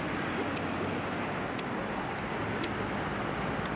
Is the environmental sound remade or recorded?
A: recorded